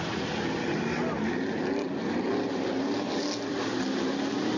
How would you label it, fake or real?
real